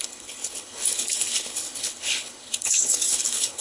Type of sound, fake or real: fake